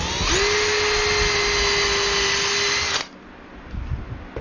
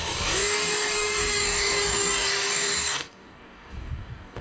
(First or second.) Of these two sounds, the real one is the first